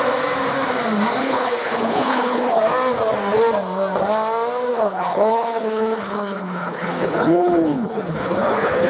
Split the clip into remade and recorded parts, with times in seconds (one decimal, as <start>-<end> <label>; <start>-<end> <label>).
0.0-1.2 recorded; 1.2-2.6 remade; 2.6-4.7 recorded; 4.7-8.9 remade